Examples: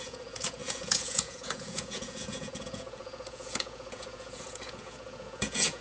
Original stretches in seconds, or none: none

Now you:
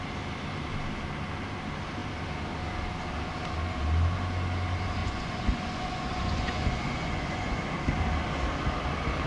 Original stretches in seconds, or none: 0.0-5.0; 7.6-9.3